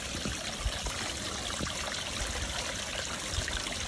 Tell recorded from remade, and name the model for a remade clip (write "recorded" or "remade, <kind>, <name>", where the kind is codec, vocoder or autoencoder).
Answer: recorded